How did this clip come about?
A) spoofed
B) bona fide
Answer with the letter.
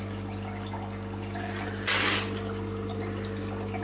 B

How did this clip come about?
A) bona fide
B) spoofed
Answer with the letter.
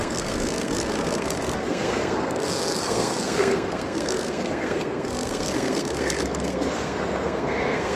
B